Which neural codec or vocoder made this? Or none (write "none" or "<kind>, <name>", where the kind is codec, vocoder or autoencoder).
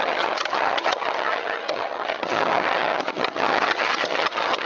vocoder, HiFi-GAN